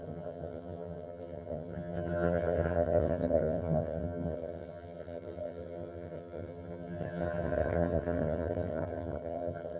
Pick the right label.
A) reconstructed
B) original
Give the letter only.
A